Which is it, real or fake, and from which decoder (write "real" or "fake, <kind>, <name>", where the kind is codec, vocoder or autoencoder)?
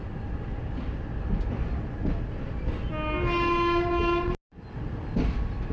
real